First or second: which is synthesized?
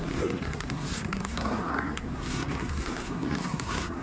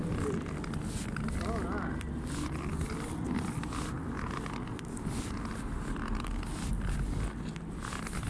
first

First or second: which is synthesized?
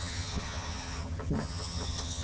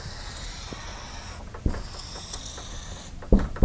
first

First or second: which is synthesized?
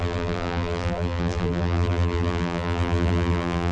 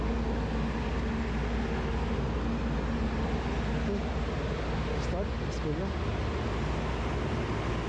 first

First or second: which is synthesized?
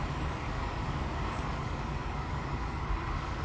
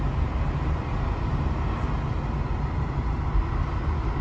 first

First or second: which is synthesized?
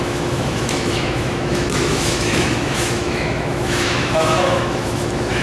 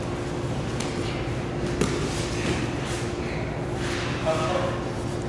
first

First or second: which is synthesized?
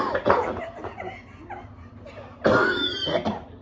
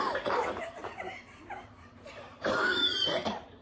second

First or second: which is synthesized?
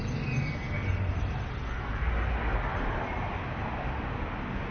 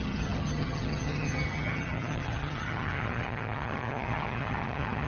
second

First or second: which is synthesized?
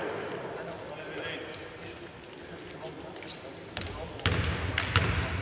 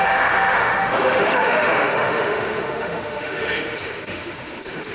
second